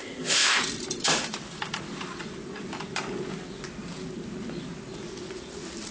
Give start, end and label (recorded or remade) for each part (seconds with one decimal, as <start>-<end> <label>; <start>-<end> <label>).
0.0-0.6 remade; 0.6-5.9 recorded